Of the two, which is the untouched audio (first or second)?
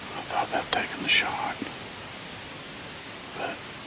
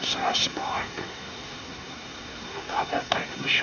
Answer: first